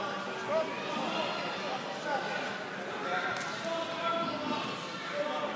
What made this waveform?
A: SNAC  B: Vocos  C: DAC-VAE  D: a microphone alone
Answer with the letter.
D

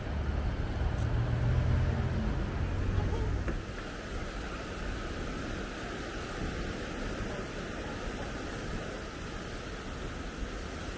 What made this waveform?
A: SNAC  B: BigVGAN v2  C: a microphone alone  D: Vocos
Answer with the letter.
C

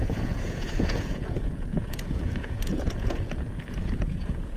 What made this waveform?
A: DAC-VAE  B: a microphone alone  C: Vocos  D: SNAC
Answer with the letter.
C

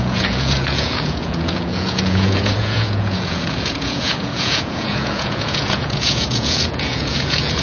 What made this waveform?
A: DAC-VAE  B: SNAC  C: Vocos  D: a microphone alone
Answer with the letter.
C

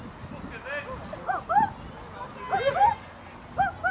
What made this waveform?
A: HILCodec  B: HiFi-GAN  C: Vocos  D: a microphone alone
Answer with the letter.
D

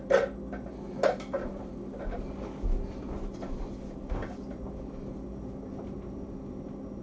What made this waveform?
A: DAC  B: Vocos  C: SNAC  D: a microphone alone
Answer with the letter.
D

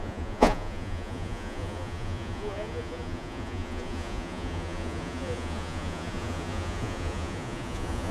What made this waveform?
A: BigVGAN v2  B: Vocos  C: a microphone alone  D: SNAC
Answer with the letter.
B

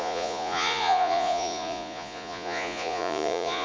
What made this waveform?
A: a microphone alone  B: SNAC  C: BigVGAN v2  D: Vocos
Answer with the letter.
D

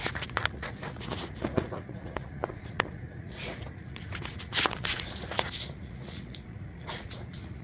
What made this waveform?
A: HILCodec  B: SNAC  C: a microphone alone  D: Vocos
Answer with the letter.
D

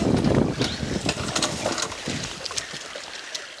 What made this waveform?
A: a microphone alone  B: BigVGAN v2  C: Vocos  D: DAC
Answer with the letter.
A